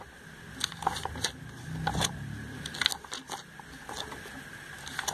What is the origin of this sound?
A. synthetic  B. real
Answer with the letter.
B